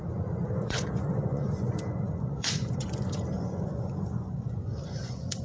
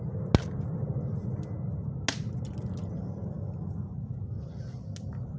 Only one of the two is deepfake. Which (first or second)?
first